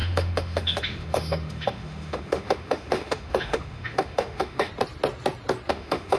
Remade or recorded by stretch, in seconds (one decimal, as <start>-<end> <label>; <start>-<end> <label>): 0.0-4.7 remade; 4.7-5.7 recorded; 5.7-6.2 remade